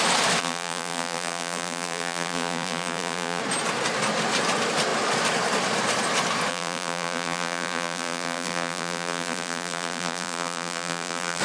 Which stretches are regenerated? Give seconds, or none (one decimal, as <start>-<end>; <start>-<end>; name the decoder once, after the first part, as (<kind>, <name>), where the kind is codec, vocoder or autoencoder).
0.4-3.4 (vocoder, BigVGAN v2); 6.5-11.4